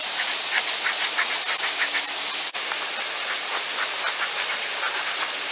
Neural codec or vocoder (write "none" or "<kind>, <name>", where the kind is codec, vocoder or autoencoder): none